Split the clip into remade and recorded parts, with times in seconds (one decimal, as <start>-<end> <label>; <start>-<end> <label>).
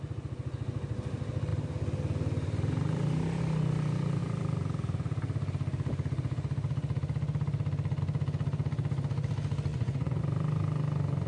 0.0-9.7 recorded; 9.7-10.2 remade; 10.2-11.3 recorded